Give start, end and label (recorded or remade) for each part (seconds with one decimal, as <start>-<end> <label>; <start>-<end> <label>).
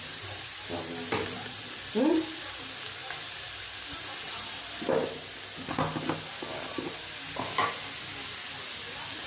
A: 0.0-9.3 recorded